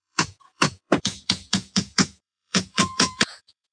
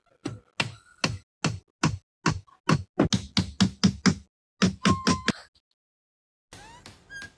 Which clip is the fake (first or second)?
first